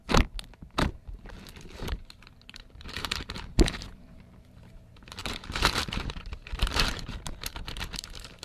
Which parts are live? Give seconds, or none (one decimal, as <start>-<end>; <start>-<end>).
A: 0.0-2.2